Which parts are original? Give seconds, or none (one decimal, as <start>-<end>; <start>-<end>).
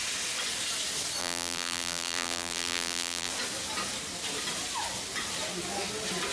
0.0-1.2; 3.3-6.3